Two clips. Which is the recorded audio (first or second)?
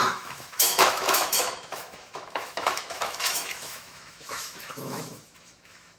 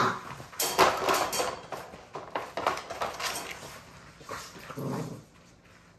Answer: second